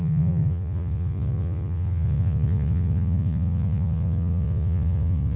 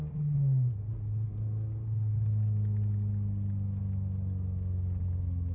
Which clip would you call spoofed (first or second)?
first